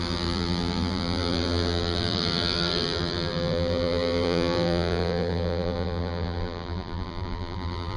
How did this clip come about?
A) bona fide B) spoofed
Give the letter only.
B